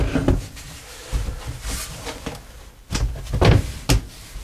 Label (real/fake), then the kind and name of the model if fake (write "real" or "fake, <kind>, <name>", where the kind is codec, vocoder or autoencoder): real